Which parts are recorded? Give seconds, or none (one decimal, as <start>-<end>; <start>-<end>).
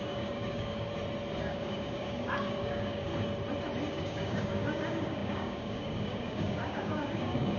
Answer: 0.9-1.4; 3.1-3.9